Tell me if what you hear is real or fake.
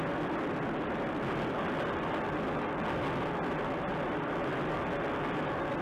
real